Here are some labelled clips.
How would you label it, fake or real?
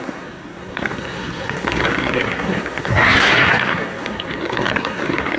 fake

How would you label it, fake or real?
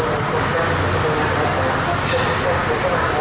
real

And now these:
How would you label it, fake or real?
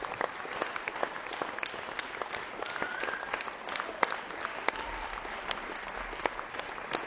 real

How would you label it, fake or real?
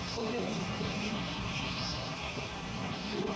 fake